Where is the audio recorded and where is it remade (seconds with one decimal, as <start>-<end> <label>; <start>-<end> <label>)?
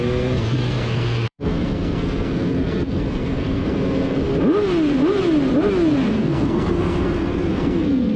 0.0-4.3 remade; 4.3-6.1 recorded; 6.1-8.2 remade